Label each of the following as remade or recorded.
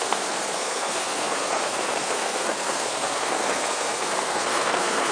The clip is remade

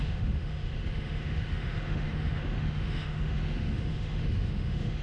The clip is remade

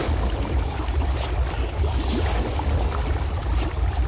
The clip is recorded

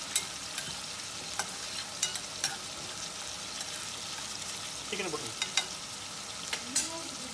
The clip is recorded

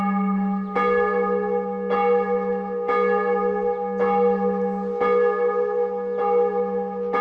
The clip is recorded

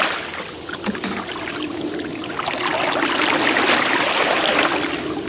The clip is recorded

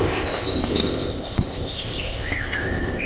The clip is remade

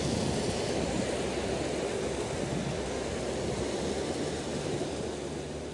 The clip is recorded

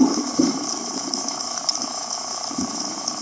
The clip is remade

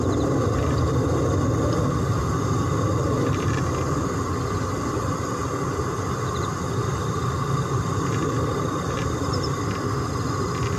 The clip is recorded